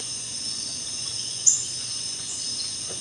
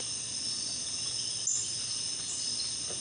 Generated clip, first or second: first